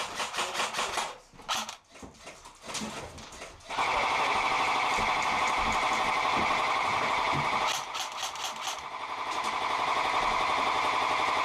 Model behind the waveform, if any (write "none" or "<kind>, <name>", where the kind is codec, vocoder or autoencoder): none